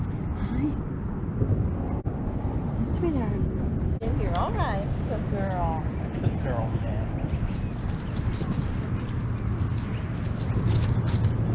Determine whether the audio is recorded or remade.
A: recorded